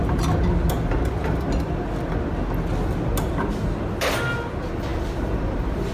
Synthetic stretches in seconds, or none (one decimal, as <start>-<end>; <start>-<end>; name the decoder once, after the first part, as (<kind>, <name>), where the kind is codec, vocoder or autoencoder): 4.9-5.9 (vocoder, BigVGAN v2)